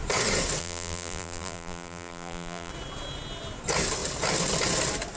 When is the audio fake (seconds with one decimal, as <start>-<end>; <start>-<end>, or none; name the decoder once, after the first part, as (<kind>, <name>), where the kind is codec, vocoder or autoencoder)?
0.6-2.7 (vocoder, BigVGAN v2)